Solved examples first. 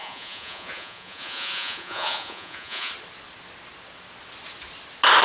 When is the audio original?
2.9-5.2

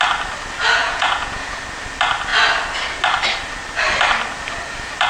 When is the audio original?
0.0-0.8; 1.6-5.1

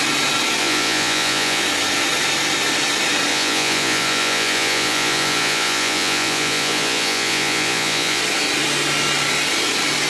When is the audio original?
0.0-0.6; 1.6-3.3; 8.2-10.1